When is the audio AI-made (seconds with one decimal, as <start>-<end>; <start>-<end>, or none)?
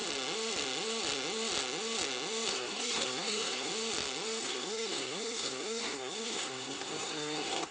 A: 2.5-3.7; 4.4-7.7